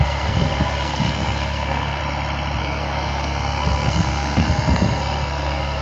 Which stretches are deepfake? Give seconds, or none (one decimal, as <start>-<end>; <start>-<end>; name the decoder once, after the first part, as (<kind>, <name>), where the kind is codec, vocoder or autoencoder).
0.0-2.0 (codec, SNAC); 2.6-5.8